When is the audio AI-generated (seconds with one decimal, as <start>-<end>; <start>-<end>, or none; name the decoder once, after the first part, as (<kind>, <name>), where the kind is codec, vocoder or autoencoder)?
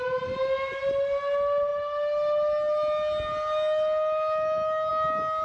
none